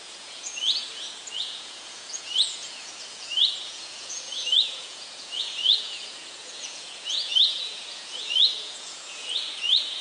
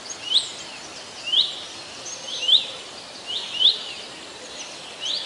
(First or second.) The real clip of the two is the second